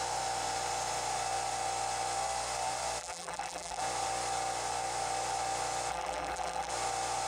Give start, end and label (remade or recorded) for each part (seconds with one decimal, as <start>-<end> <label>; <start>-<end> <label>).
0.0-3.0 recorded; 3.0-3.8 remade; 3.8-5.9 recorded; 5.9-6.7 remade; 6.7-7.3 recorded